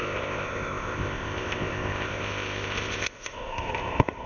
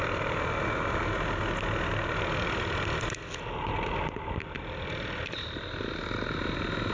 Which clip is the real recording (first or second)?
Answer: second